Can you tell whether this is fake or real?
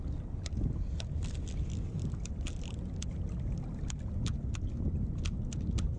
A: real